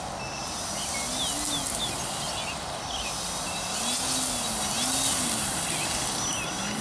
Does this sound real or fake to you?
real